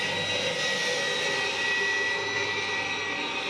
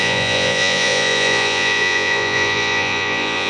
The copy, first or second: second